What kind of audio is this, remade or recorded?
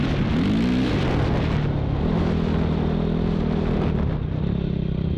recorded